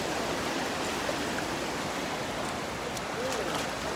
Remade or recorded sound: recorded